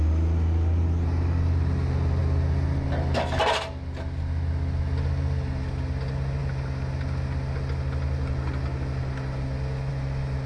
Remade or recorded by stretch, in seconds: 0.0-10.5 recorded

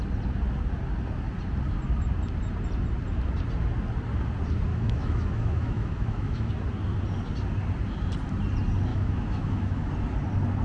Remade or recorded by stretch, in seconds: 0.0-4.7 recorded; 4.7-6.5 remade; 6.5-8.9 recorded; 8.9-9.9 remade; 9.9-10.6 recorded

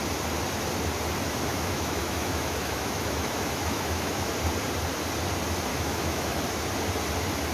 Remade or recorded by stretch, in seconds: 0.0-1.5 recorded; 1.5-4.3 remade; 4.3-5.7 recorded; 5.7-6.4 remade; 6.4-7.5 recorded

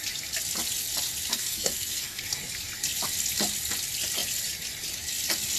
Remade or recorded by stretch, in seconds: 0.0-1.3 recorded; 1.3-2.2 remade; 2.2-5.6 recorded